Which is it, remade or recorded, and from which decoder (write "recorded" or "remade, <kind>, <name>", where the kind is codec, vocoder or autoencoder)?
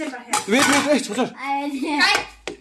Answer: recorded